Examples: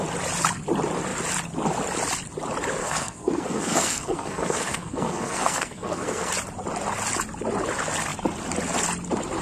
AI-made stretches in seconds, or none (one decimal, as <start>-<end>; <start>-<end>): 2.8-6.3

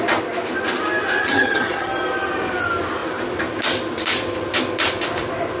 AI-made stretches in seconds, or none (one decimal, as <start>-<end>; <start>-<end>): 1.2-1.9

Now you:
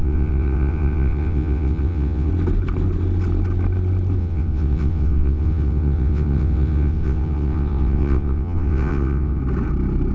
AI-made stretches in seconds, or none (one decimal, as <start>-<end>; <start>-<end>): 0.0-2.3; 4.2-9.4

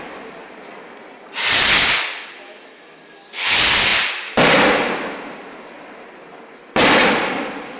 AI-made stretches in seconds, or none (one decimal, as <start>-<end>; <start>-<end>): none